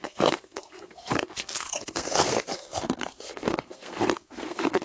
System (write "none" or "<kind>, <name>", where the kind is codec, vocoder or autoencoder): codec, SNAC